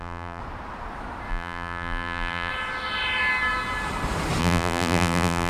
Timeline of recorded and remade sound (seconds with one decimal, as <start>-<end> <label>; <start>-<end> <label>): 0.0-0.4 remade; 0.4-1.3 recorded; 1.3-2.5 remade; 2.5-4.4 recorded; 4.4-5.5 remade